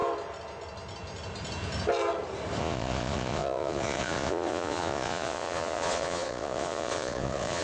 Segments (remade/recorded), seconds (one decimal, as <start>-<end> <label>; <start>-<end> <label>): 0.0-2.6 recorded; 2.6-7.6 remade